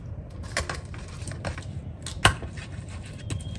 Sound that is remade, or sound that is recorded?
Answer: recorded